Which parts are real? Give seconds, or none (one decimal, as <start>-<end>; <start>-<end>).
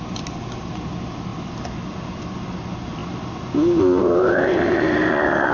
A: 0.0-5.5